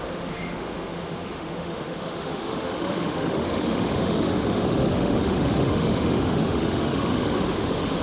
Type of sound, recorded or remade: remade